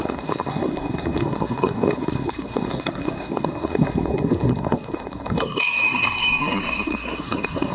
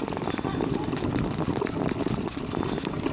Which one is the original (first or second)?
second